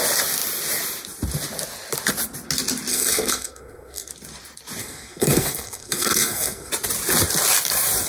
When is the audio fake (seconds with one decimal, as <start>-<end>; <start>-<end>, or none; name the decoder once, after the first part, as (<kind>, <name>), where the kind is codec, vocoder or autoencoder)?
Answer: 2.9-4.1 (codec, SNAC); 4.8-6.7